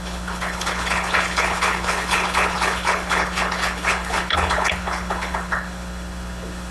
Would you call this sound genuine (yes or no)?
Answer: no